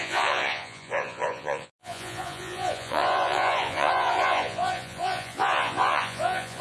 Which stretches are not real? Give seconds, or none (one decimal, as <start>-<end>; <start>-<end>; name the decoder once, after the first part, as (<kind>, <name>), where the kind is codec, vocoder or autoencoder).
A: 0.0-6.6 (vocoder, Vocos)

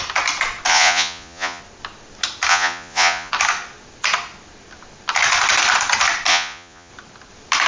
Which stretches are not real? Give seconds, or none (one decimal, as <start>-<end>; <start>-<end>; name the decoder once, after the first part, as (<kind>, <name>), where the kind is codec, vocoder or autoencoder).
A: 0.7-1.6 (vocoder, Vocos); 2.5-3.3; 6.3-6.9

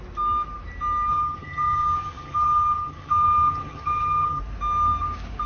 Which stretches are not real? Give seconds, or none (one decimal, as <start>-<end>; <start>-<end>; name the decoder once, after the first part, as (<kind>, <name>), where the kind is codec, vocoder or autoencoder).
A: 1.1-4.4 (vocoder, HiFi-GAN)

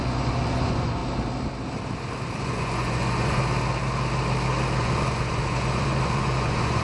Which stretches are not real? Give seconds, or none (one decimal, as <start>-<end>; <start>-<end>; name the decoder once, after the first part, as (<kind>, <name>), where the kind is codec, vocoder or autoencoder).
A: 0.0-1.0 (vocoder, Vocos); 2.4-3.4; 4.8-6.8

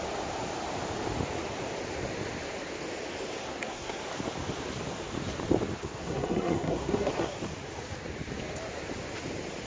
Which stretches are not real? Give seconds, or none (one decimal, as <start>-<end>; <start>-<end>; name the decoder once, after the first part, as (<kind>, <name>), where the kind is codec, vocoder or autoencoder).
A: 3.4-4.0 (codec, SNAC); 5.8-7.4

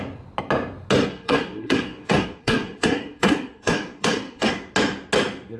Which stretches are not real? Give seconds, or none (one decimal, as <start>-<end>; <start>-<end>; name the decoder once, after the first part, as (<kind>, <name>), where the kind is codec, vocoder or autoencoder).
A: 1.1-4.5 (codec, SNAC)